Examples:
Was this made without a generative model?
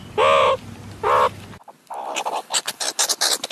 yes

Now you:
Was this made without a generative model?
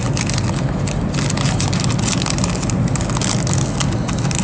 yes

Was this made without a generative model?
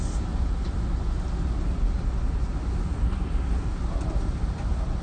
yes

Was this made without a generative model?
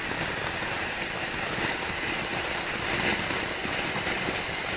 yes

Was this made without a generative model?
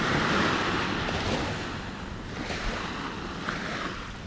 yes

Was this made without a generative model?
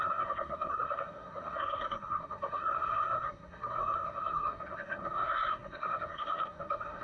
no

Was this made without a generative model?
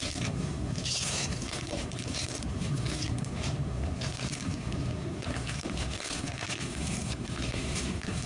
no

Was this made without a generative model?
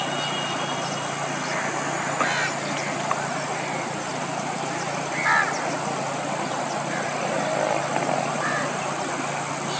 yes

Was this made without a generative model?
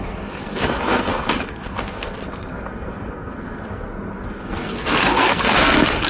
no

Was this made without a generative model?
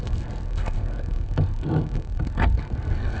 no